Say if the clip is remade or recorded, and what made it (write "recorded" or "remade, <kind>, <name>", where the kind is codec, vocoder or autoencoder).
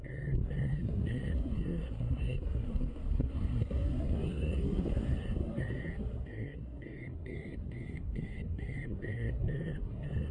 remade, codec, SNAC